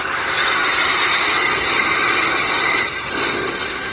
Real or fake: real